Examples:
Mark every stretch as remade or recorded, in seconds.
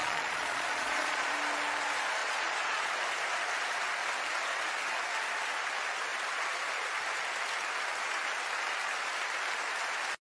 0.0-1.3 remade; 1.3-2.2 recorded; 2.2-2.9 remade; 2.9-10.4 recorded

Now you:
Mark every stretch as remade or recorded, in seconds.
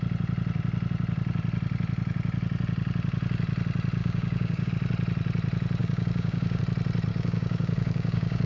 0.0-4.0 recorded; 4.0-4.7 remade; 4.7-5.8 recorded; 5.8-6.6 remade; 6.6-7.1 recorded; 7.1-8.5 remade